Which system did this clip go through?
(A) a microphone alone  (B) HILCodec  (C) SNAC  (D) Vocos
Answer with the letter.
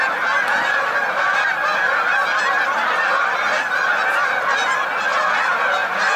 A